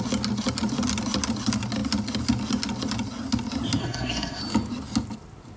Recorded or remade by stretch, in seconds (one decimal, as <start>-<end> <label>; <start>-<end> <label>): 0.0-3.8 recorded; 3.8-4.4 remade; 4.4-5.6 recorded